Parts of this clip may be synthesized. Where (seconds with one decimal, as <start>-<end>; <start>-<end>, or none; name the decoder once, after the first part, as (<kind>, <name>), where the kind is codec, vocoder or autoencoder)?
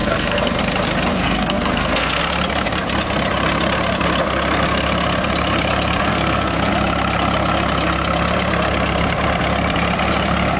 0.0-0.6 (codec, SNAC); 1.1-2.2; 6.1-6.7